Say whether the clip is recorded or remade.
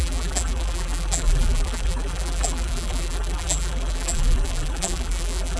remade